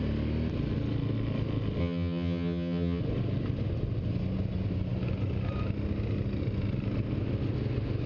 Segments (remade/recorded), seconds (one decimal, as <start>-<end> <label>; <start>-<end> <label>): 0.0-1.8 recorded; 1.8-3.0 remade; 3.0-8.1 recorded